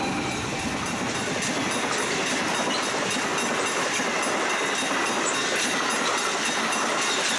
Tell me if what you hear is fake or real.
real